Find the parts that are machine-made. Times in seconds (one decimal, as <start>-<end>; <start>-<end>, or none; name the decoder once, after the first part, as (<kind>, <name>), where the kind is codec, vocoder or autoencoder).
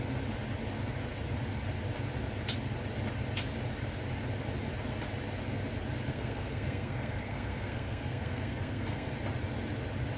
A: 6.1-9.1 (codec, SNAC)